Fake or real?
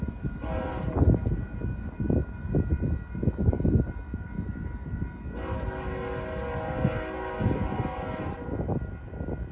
real